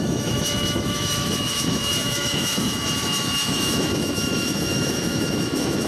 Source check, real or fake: fake